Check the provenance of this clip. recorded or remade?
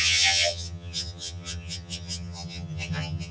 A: remade